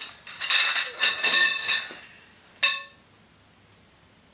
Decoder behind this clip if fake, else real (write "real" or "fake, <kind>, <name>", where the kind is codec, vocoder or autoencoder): real